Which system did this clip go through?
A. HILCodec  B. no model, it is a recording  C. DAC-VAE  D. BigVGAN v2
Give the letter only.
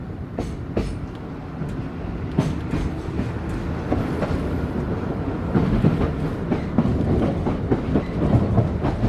B